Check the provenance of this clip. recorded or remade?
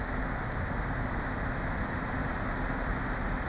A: recorded